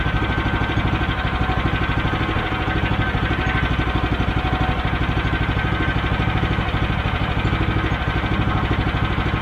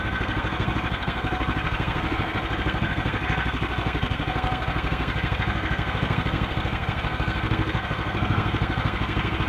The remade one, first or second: second